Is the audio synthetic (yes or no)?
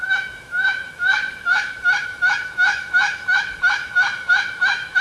yes